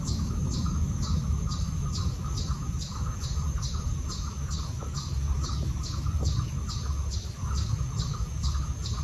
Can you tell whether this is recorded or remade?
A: remade